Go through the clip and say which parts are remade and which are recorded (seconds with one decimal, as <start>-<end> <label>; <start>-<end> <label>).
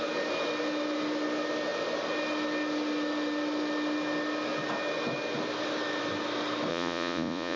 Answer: 0.0-6.7 recorded; 6.7-7.6 remade